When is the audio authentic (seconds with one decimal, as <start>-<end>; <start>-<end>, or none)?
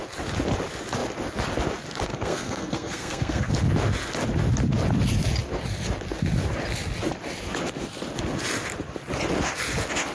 0.0-2.1; 3.5-10.1